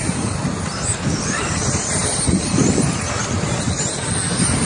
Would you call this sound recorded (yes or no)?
yes